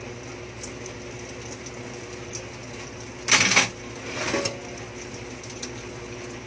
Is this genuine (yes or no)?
yes